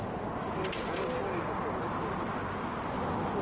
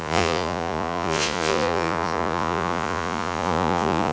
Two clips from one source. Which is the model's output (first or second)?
second